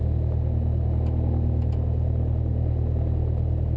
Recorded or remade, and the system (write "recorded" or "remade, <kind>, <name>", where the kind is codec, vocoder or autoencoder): recorded